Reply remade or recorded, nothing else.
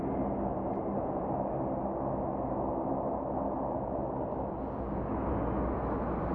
recorded